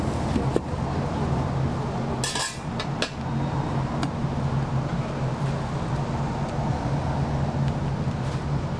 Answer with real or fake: real